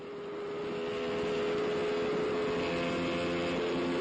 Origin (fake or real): real